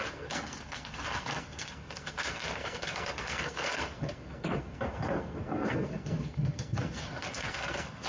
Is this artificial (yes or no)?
yes